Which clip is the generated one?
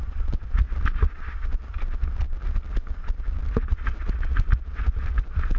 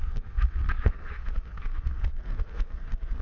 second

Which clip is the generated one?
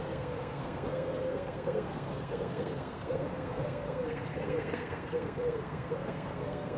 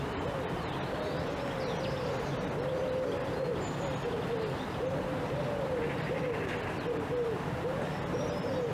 first